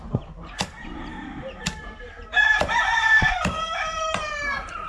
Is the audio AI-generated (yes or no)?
yes